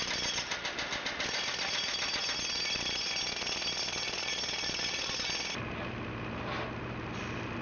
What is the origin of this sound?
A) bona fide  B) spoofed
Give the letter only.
A